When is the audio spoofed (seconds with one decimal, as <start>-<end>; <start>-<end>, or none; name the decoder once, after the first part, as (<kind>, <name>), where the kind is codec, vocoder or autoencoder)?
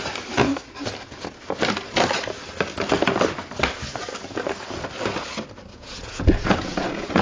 5.7-7.2 (vocoder, Vocos)